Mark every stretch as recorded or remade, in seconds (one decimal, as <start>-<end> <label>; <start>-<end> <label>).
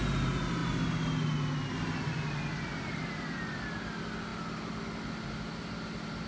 0.0-6.3 recorded